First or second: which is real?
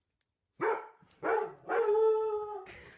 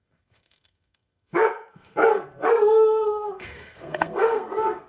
first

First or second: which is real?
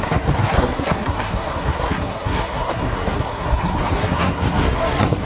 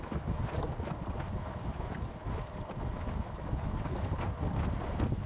second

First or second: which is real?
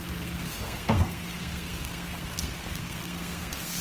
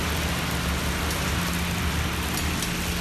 second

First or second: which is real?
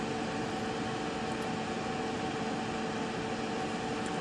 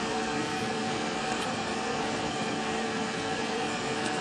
first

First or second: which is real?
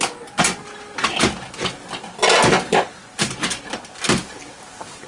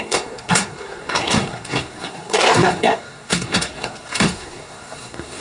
first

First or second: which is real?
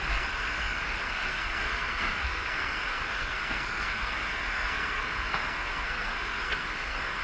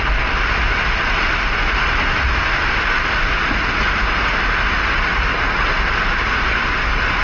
second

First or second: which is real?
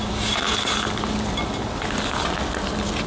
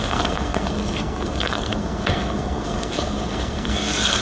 first